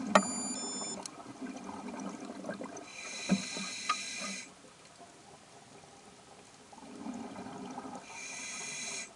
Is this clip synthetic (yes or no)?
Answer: no